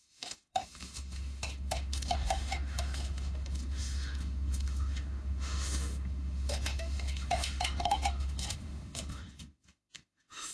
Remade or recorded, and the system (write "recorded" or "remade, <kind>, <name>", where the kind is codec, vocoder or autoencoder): remade, autoencoder, DAC-VAE